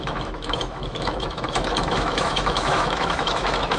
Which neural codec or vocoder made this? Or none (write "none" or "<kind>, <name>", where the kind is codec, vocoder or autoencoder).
autoencoder, DAC-VAE